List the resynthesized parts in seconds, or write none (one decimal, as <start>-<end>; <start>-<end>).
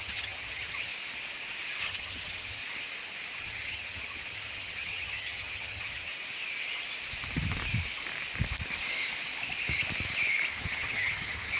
0.0-0.9; 1.8-2.6; 3.4-6.1; 10.5-11.6